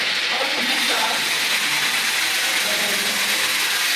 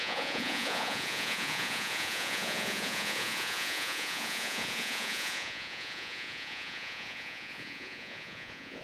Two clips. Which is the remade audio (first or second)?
second